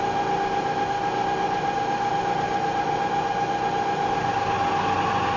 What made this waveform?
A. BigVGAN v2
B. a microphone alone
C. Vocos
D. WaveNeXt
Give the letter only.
B